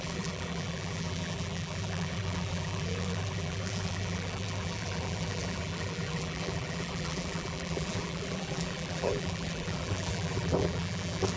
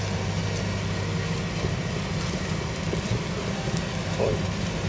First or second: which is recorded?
second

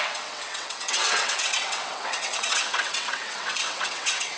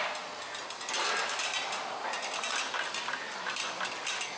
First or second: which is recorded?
second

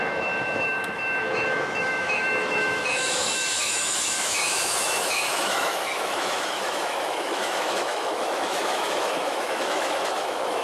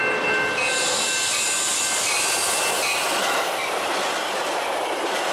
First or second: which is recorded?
second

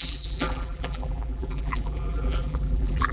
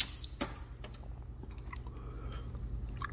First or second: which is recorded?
second